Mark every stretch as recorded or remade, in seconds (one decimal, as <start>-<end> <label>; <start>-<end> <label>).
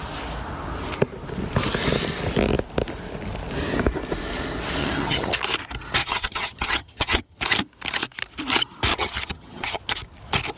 0.0-4.8 recorded; 4.8-5.3 remade; 5.3-6.0 recorded; 6.0-7.4 remade; 7.4-8.9 recorded; 8.9-9.8 remade; 9.8-10.6 recorded